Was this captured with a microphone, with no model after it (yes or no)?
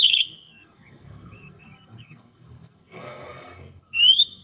no